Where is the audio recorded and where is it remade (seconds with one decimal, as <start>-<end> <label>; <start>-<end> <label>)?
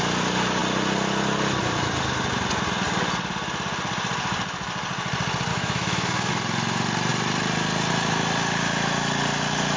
0.0-5.5 recorded; 5.5-6.3 remade; 6.3-9.8 recorded